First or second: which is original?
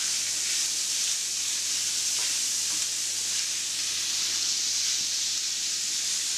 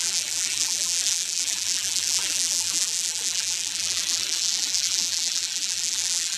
first